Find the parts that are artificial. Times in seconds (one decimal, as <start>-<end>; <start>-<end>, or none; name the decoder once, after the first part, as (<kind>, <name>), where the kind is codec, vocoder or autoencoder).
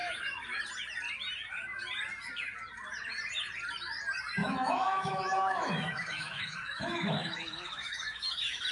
0.0-0.6 (autoencoder, DAC-VAE); 4.4-8.7